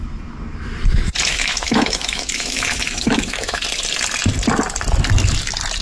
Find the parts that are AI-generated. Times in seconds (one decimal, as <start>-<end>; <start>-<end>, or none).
1.3-3.6